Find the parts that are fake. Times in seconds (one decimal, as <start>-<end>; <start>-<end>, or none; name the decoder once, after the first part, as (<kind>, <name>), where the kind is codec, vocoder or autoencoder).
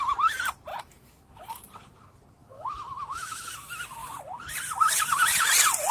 0.7-1.4 (autoencoder, DAC-VAE); 2.4-3.5